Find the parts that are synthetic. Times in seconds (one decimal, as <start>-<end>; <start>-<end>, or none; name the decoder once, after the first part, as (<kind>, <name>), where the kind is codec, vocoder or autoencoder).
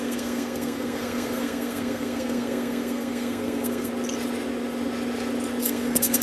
0.0-3.9 (codec, SNAC); 5.6-6.2